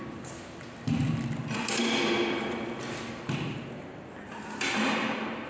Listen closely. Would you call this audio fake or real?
real